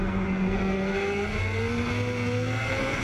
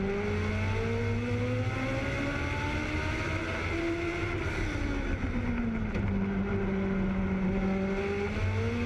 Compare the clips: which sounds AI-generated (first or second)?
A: first